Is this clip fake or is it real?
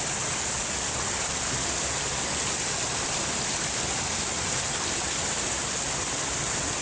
real